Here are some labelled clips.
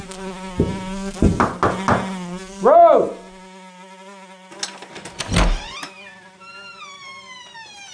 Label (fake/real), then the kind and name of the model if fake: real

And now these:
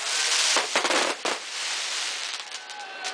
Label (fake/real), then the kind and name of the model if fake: real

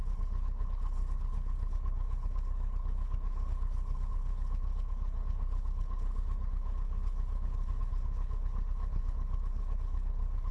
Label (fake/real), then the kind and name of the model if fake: fake, codec, HILCodec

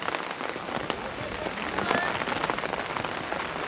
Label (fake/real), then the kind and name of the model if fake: real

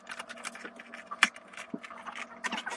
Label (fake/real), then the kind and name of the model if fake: real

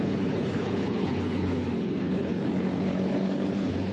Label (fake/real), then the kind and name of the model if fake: fake, codec, HILCodec